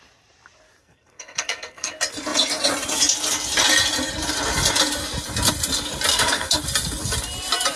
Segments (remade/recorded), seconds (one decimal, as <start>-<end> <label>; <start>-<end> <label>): 0.0-0.8 recorded; 0.8-1.9 remade; 1.9-6.1 recorded; 6.1-6.6 remade; 6.6-7.8 recorded